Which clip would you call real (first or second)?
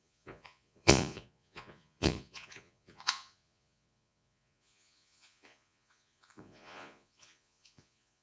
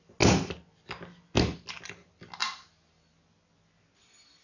second